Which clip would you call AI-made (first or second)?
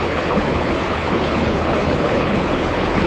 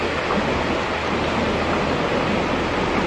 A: first